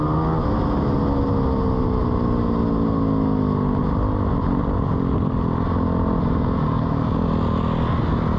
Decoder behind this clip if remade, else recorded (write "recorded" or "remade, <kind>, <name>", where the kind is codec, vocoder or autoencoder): recorded